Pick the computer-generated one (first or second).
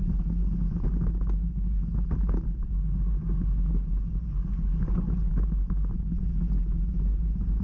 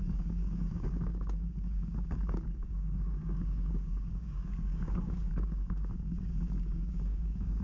second